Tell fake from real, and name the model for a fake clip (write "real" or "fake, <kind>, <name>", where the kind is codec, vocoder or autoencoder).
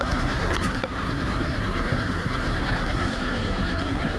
fake, codec, SNAC